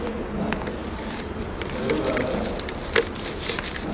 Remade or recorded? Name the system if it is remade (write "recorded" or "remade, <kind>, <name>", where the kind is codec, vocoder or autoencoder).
remade, vocoder, BigVGAN v2